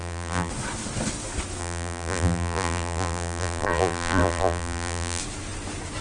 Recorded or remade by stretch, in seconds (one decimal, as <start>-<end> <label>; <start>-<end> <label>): 0.0-0.5 remade; 0.5-1.6 recorded; 1.6-5.2 remade; 5.2-6.0 recorded